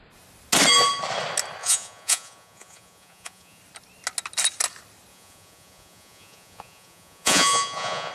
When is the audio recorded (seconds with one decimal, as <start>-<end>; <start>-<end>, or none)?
0.0-1.6; 3.6-5.1